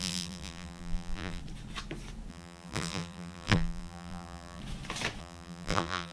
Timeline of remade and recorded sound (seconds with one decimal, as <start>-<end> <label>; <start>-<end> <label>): 0.0-1.4 remade; 1.4-2.3 recorded; 2.3-4.6 remade; 4.6-5.2 recorded; 5.2-6.1 remade